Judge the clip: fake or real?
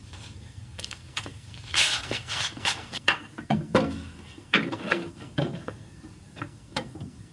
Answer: fake